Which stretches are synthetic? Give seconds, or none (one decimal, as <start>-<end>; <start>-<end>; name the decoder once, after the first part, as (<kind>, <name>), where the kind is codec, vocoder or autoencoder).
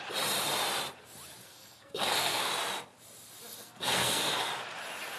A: 1.4-2.5 (codec, SNAC); 3.6-4.5